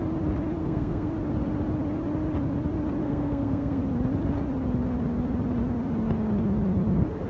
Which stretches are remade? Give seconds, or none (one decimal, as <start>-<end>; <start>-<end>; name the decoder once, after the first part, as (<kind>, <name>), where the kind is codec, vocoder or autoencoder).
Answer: 0.6-1.1 (codec, SNAC); 3.0-3.8